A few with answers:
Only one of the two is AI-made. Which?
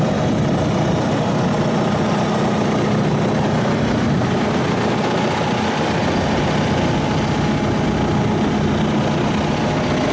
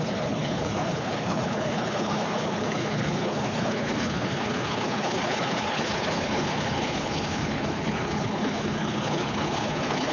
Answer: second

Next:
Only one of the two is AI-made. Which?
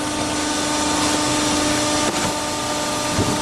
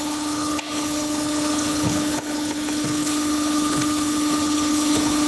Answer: second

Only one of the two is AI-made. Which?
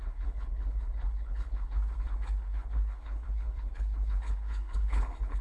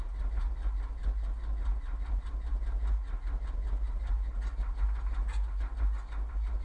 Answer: first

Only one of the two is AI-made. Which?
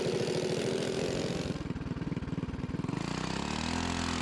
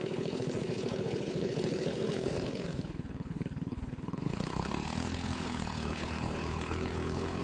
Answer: second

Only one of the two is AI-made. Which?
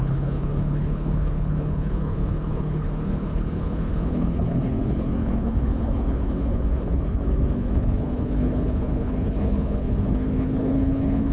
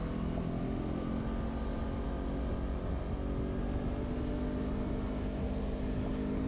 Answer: first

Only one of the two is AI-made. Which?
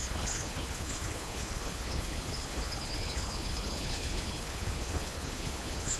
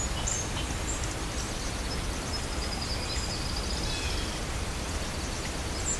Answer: first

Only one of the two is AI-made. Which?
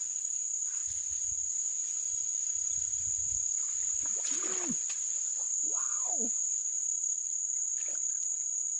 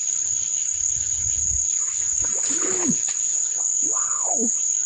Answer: second